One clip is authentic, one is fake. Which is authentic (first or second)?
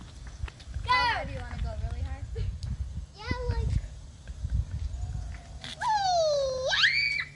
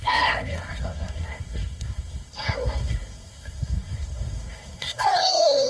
first